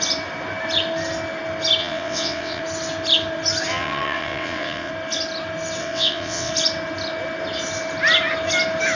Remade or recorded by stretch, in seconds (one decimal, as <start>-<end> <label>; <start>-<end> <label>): 0.0-1.8 recorded; 1.8-2.6 remade; 2.6-3.7 recorded; 3.7-4.9 remade; 4.9-5.8 recorded; 5.8-6.5 remade; 6.5-9.0 recorded